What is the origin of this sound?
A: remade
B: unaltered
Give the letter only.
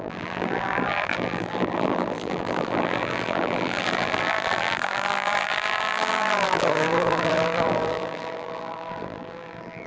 A